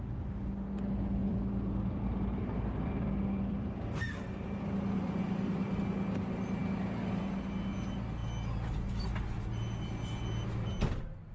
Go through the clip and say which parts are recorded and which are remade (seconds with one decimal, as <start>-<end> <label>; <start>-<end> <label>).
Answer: 0.0-1.2 recorded; 1.2-5.8 remade; 5.8-11.3 recorded